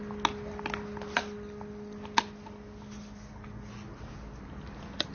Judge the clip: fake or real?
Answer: real